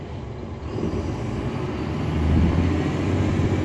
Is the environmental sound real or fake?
real